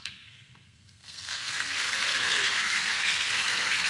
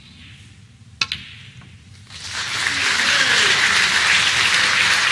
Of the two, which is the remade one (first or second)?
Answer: first